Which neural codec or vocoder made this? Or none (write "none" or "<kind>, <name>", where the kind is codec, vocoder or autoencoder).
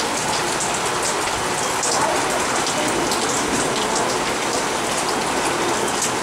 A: none